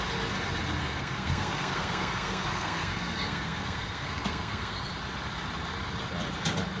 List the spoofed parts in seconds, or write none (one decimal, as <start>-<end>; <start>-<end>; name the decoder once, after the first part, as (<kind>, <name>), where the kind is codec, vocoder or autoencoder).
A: 0.8-4.9 (codec, SNAC)